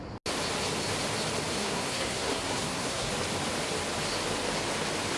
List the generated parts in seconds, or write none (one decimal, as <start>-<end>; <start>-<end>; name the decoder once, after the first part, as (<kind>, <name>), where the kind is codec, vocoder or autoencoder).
1.5-3.1 (codec, SNAC)